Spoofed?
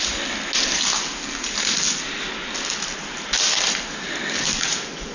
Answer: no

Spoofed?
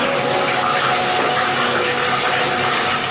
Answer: no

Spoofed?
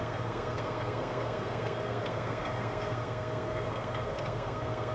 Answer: yes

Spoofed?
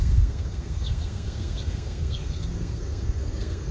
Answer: yes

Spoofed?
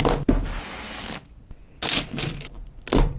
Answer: no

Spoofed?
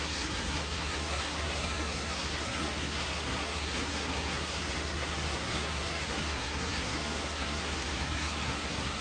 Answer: yes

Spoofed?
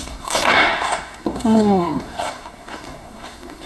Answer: yes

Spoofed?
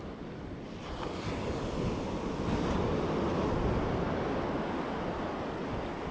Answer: no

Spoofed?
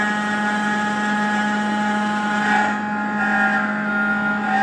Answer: no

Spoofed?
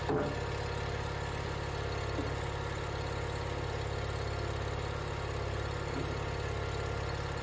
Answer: no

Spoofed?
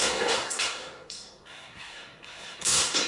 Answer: yes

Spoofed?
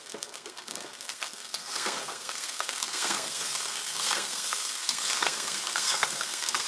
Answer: yes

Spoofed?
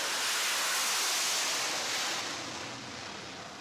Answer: no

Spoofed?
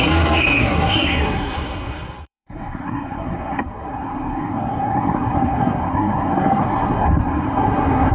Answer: yes